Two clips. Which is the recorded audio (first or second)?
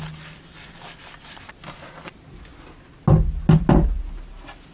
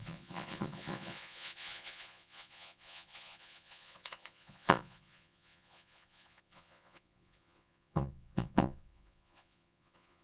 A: first